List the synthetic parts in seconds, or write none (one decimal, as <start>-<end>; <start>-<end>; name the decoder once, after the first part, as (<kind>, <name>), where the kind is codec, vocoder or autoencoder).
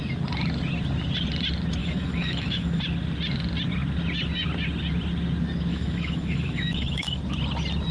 1.8-2.8 (autoencoder, DAC-VAE); 5.7-7.2